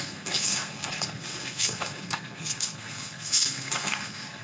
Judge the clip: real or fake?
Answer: fake